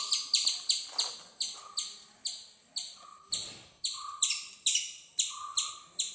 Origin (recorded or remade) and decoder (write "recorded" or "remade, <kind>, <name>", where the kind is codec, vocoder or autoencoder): recorded